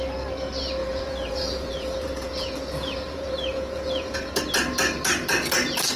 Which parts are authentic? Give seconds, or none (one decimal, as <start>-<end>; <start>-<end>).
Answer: 0.0-0.8; 4.4-6.0